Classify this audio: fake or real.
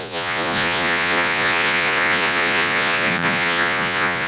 fake